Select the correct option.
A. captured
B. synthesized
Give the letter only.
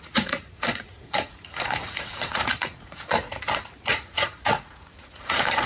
B